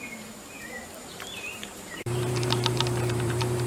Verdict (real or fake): fake